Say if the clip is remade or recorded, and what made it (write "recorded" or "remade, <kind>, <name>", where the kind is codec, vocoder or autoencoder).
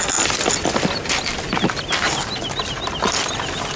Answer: recorded